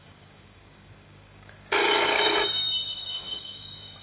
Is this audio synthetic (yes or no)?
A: yes